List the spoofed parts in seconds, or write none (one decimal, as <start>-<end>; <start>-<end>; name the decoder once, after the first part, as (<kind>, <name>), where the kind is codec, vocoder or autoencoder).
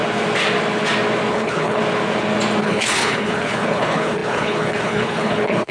1.3-1.8 (codec, HILCodec); 2.6-5.7